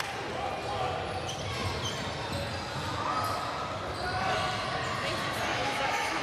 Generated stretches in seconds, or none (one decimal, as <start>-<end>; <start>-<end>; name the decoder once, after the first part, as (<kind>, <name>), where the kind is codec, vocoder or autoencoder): 5.5-6.2 (autoencoder, DAC-VAE)